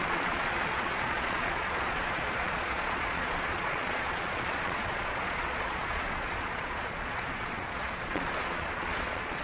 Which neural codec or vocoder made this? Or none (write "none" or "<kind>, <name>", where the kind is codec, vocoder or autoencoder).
vocoder, Vocos